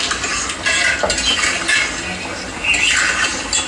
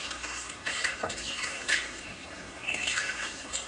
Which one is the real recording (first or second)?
first